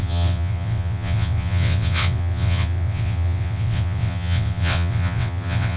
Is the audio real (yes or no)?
no